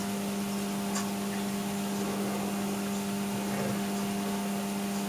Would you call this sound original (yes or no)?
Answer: yes